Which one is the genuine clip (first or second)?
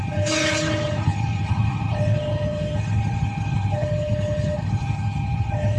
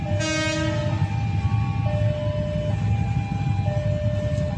second